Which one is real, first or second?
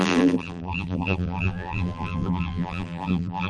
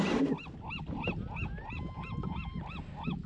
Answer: second